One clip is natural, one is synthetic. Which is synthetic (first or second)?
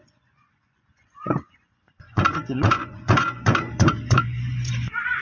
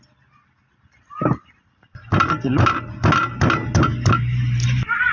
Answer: first